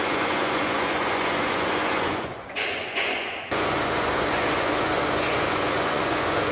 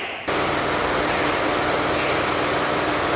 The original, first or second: second